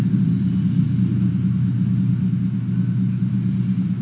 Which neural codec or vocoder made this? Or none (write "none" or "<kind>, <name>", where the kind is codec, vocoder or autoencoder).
none